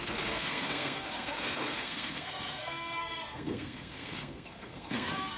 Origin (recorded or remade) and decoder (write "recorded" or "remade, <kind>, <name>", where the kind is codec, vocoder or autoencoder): remade, codec, SNAC